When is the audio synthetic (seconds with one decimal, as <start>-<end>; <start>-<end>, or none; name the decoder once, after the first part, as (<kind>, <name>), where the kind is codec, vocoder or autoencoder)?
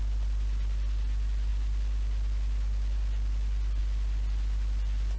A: none